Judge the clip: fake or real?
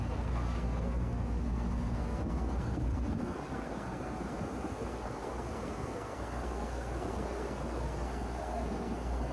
fake